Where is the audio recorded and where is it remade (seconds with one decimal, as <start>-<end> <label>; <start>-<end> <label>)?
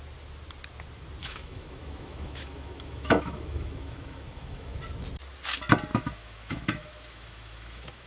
0.0-1.2 recorded; 1.2-4.8 remade; 4.8-5.9 recorded; 5.9-8.1 remade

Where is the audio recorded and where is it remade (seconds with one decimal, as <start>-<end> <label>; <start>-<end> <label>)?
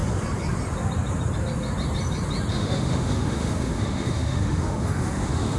0.0-2.5 recorded; 2.5-5.6 remade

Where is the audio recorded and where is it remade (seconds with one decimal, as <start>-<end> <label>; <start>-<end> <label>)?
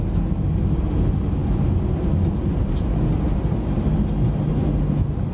0.0-5.3 recorded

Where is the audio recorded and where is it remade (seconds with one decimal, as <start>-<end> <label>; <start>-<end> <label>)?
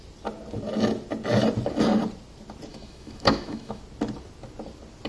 0.0-2.7 recorded; 2.7-3.8 remade; 3.8-5.1 recorded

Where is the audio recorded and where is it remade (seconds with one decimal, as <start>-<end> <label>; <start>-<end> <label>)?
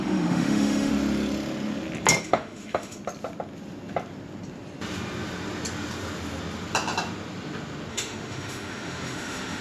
0.0-0.9 remade; 0.9-2.2 recorded; 2.2-3.0 remade; 3.0-7.9 recorded; 7.9-9.6 remade